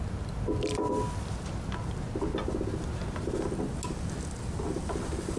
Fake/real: real